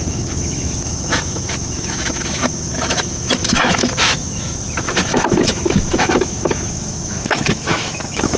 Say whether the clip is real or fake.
fake